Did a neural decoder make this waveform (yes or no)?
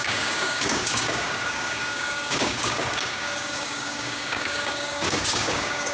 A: yes